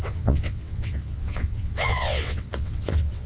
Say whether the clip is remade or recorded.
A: remade